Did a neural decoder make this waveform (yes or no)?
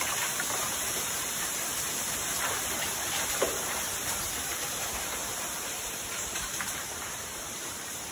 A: yes